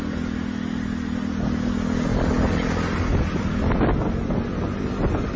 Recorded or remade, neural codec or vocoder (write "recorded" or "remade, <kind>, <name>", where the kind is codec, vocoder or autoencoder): recorded